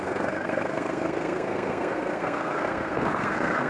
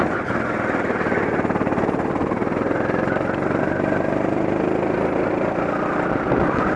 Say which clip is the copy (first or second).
first